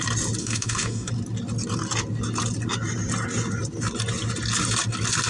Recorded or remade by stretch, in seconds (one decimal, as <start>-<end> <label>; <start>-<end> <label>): 0.0-0.4 recorded; 0.4-1.1 remade; 1.1-5.3 recorded